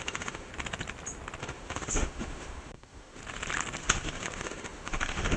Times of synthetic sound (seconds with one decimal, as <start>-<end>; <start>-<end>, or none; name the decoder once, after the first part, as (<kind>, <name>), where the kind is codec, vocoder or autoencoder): 0.0-0.5 (autoencoder, DAC-VAE); 1.4-3.2; 3.8-5.4